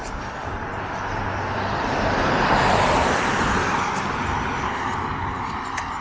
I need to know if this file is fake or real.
real